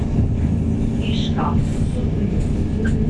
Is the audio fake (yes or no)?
no